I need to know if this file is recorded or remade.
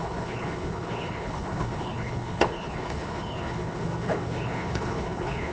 remade